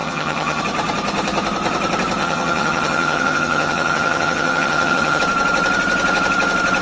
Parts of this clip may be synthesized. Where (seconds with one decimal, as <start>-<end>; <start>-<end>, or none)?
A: 0.0-0.6; 2.2-5.2

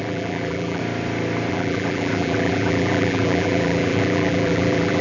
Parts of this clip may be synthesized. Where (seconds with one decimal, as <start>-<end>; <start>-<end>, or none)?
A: 0.0-0.8; 1.5-5.0

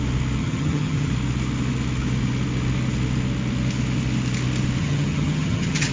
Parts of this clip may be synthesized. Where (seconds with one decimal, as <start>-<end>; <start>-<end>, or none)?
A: 0.4-1.1; 4.8-5.9

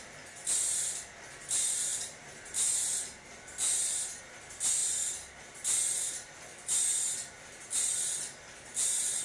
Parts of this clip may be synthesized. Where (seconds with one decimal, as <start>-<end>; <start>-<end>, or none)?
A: none

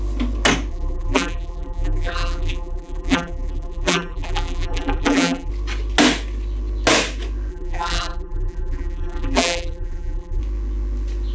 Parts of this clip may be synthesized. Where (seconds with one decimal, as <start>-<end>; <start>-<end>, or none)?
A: 0.7-5.5; 7.5-10.4

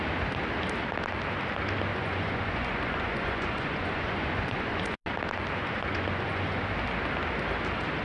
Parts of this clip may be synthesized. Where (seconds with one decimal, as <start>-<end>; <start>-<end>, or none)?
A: 1.9-5.0; 5.6-6.6

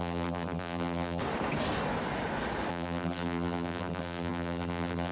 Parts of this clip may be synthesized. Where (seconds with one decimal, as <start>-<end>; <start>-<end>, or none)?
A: 0.0-1.2; 2.7-5.1

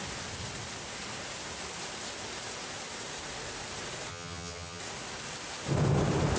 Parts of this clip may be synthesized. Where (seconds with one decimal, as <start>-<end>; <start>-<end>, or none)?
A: 4.1-4.8